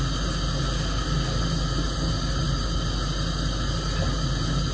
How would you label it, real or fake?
real